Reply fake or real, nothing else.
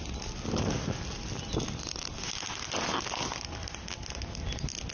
real